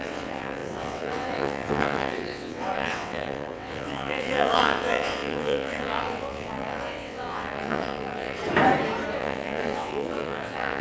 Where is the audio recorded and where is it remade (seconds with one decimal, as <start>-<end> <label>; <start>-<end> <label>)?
0.0-8.4 remade; 8.4-9.2 recorded; 9.2-10.8 remade